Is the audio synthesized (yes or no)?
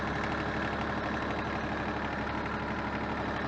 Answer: no